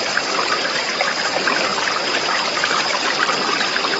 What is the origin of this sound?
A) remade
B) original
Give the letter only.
A